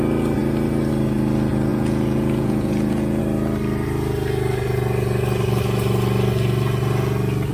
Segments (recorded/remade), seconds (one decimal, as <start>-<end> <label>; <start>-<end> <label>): 0.0-1.7 recorded; 1.7-3.2 remade; 3.2-7.5 recorded